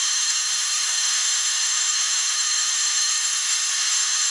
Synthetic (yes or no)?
yes